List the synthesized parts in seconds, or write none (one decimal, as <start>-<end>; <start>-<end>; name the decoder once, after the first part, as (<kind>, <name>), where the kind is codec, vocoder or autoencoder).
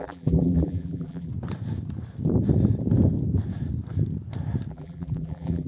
0.0-1.3 (vocoder, BigVGAN v2); 4.7-5.7